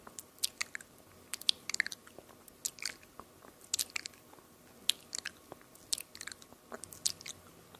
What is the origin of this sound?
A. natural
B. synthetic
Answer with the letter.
A